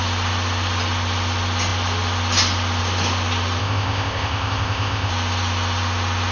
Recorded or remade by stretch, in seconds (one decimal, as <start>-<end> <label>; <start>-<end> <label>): 0.0-3.6 recorded; 3.6-5.1 remade; 5.1-6.3 recorded

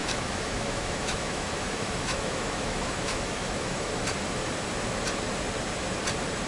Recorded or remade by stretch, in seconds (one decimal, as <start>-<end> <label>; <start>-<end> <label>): 0.0-3.9 remade; 3.9-6.5 recorded

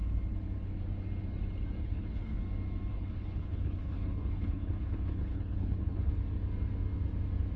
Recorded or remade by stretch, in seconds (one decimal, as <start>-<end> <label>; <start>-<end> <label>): 0.0-1.8 recorded; 1.8-2.4 remade; 2.4-2.9 recorded; 2.9-6.1 remade; 6.1-7.6 recorded

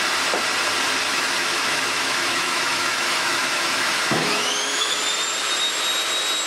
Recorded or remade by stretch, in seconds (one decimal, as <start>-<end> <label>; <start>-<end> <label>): 0.0-1.1 recorded; 1.1-5.0 remade; 5.0-6.5 recorded

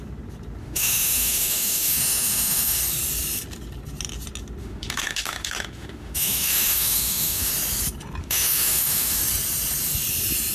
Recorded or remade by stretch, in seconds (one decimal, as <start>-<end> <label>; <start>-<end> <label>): 0.0-0.6 recorded; 0.6-2.8 remade; 2.8-4.6 recorded; 4.6-7.5 remade; 7.5-8.2 recorded; 8.2-9.2 remade; 9.2-10.5 recorded

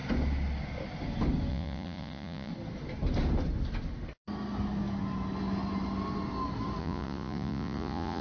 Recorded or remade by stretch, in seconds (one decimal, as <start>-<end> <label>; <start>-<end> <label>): 0.0-1.5 recorded; 1.5-2.5 remade; 2.5-6.8 recorded; 6.8-8.2 remade